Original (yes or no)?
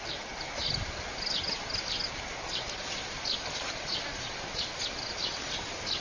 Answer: yes